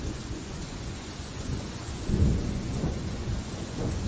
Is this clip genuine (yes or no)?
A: no